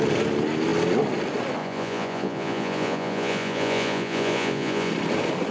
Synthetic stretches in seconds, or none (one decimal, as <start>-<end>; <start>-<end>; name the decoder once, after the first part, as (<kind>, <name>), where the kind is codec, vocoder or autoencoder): 1.6-4.9 (vocoder, Vocos)